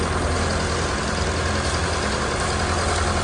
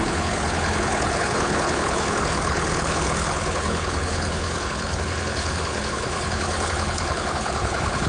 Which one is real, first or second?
first